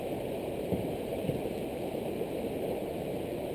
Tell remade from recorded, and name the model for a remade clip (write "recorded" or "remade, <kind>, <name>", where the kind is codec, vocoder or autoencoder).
remade, vocoder, BigVGAN v2